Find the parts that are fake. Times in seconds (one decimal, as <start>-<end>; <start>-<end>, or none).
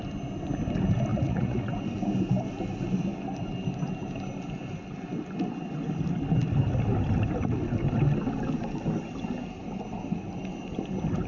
1.1-1.6